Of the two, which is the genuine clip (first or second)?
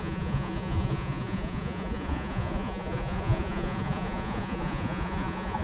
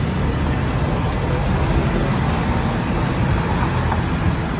second